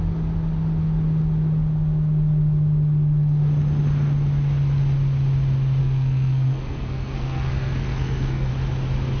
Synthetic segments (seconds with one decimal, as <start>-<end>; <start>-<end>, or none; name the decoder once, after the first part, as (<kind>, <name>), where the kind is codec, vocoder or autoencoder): 5.8-8.5 (codec, SNAC)